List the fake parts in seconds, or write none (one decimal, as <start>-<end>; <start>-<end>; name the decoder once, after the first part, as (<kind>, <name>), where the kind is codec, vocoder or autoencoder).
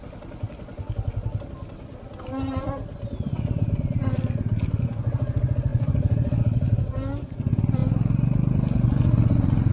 5.7-6.4 (vocoder, BigVGAN v2)